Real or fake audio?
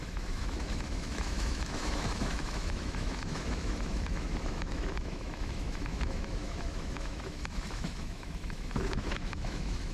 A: fake